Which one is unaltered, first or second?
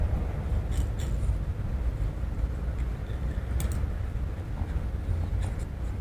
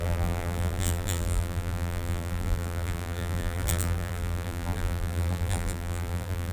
first